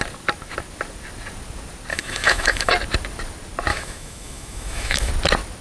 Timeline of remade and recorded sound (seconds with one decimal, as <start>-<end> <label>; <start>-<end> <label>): 0.0-1.9 recorded; 1.9-2.7 remade; 2.7-3.7 recorded; 3.7-5.1 remade; 5.1-5.6 recorded